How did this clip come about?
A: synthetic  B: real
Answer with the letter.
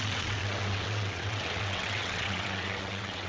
A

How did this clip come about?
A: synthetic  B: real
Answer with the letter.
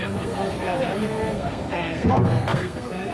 A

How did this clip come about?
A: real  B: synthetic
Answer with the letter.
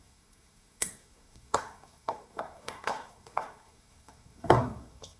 B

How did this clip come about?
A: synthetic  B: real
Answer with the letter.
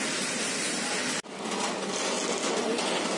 B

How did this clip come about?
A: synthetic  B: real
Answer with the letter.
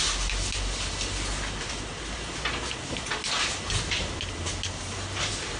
B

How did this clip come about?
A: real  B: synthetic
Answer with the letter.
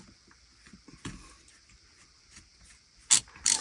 A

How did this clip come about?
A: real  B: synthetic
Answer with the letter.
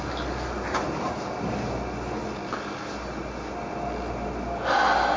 A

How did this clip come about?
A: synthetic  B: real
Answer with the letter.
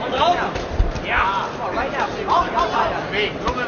B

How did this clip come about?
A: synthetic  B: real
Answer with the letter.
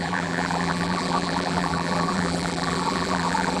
A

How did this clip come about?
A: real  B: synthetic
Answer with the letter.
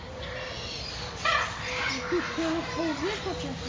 A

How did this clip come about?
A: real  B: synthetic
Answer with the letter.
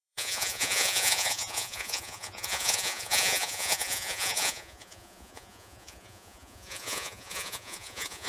B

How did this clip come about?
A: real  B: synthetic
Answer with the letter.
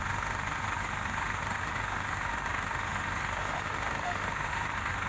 B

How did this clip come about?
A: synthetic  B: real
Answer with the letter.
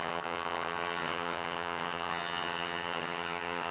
A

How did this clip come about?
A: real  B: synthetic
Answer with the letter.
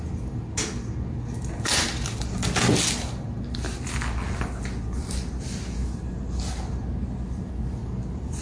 A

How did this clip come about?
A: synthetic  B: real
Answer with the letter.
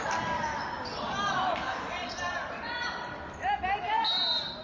B